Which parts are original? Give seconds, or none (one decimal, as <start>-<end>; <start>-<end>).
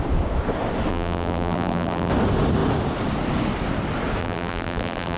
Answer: 0.0-0.9; 2.1-4.2